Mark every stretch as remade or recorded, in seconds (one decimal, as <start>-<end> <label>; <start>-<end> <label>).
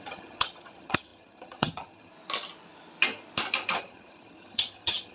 0.0-2.1 remade; 2.1-3.8 recorded; 3.8-5.1 remade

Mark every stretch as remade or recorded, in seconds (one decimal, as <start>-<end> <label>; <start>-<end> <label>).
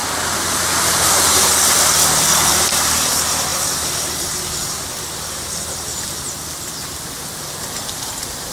0.0-2.5 recorded; 2.5-3.5 remade; 3.5-7.9 recorded; 7.9-8.5 remade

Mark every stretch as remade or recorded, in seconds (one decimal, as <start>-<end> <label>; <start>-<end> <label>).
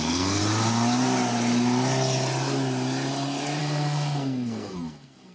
0.0-0.4 remade; 0.4-3.6 recorded; 3.6-5.3 remade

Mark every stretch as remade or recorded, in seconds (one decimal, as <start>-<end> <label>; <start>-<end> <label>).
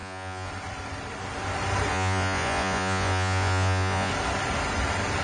0.0-0.5 remade; 0.5-1.9 recorded; 1.9-4.1 remade; 4.1-5.2 recorded